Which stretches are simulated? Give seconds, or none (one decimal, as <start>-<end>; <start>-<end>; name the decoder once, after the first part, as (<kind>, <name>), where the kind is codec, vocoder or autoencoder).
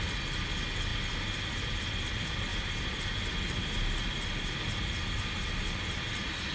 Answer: none